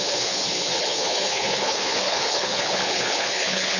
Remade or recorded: remade